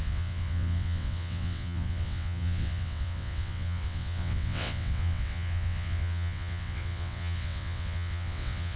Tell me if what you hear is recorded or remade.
remade